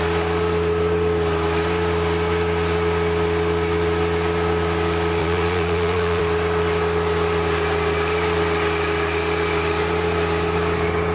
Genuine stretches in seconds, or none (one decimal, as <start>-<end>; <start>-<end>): 0.0-5.2; 6.2-11.1